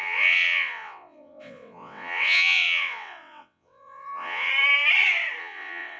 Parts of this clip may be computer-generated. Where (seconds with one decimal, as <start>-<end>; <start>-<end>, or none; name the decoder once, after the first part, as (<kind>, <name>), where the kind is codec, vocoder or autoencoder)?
0.0-4.5 (vocoder, WaveNeXt); 5.4-6.0